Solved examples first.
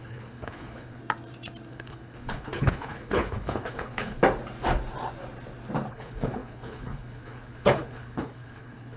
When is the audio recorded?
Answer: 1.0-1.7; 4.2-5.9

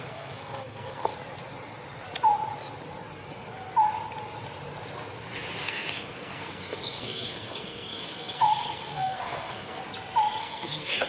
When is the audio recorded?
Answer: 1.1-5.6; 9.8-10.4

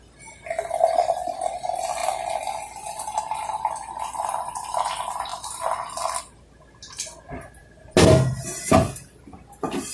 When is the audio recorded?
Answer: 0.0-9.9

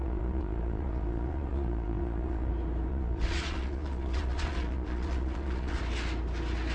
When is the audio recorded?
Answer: 2.5-2.9; 5.8-6.7

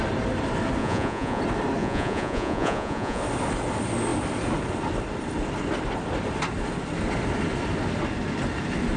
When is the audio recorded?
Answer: 0.0-0.8; 1.4-1.8; 3.2-9.0

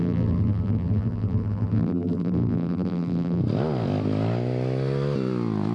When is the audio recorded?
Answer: 3.4-5.7